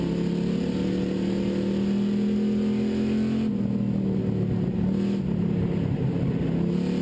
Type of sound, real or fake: real